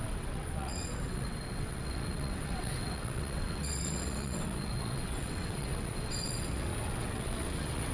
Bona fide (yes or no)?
no